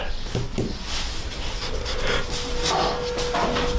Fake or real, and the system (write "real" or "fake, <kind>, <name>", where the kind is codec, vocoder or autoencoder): real